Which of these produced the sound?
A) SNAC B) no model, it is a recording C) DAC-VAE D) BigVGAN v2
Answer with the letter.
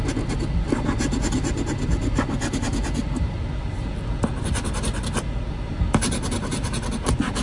B